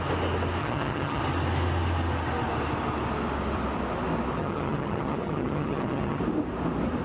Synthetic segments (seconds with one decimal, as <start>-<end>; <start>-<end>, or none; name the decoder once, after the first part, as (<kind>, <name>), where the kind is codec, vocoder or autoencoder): 0.6-1.2 (vocoder, HiFi-GAN); 4.4-6.2